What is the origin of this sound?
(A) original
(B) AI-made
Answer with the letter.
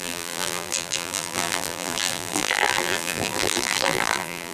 B